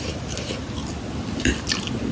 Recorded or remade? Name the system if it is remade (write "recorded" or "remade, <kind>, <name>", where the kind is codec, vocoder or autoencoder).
recorded